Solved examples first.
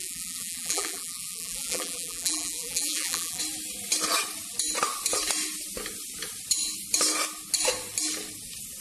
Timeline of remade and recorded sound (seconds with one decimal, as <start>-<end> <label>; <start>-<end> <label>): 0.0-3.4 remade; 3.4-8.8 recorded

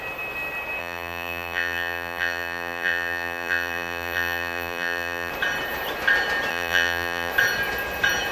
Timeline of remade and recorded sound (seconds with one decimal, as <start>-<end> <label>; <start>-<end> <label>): 0.0-0.8 recorded; 0.8-5.3 remade; 5.3-6.5 recorded; 6.5-7.3 remade; 7.3-8.3 recorded

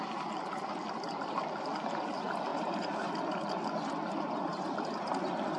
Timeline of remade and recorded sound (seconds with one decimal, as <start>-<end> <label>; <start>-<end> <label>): 0.0-2.5 recorded; 2.5-3.1 remade; 3.1-4.5 recorded; 4.5-5.1 remade; 5.1-5.6 recorded